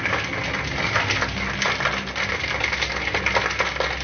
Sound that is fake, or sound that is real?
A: real